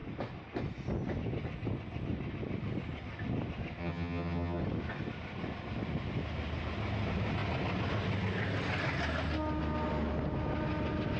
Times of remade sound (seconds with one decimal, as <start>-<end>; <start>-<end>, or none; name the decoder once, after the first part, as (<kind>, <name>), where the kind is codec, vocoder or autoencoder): 3.8-4.6 (vocoder, HiFi-GAN)